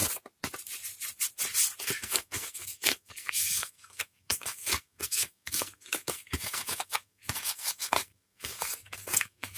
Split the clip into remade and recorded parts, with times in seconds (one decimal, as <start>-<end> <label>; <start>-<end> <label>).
0.0-1.8 recorded; 1.8-9.6 remade